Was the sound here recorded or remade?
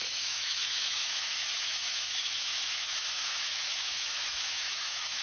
remade